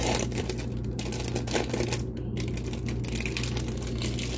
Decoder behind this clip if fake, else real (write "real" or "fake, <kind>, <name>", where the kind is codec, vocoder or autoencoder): real